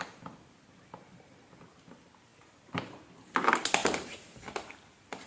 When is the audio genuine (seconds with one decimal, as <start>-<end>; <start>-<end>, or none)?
0.0-3.8; 4.3-5.3

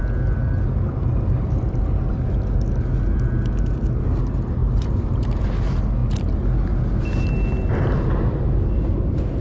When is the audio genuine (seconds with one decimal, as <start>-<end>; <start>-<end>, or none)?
0.0-4.6; 5.4-9.4